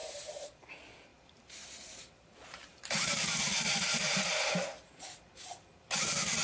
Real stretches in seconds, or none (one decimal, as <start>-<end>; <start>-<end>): 0.7-1.1; 4.5-6.4